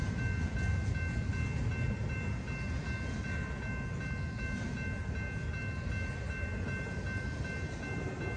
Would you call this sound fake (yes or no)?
no